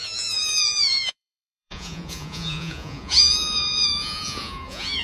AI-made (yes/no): yes